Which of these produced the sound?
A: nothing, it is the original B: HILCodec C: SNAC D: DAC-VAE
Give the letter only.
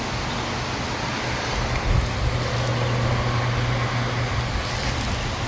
A